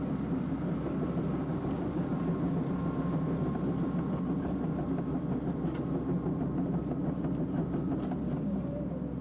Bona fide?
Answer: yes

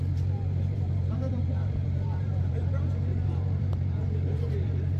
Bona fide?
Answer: no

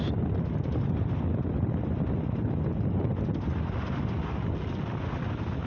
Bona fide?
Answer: yes